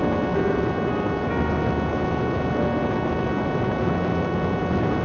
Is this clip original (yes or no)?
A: yes